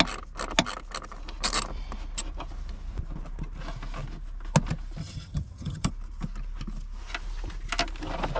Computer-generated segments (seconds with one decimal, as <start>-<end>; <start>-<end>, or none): 5.0-5.9